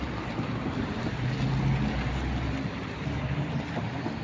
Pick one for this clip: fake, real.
real